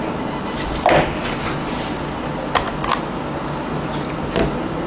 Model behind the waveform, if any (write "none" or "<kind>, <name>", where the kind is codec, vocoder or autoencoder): none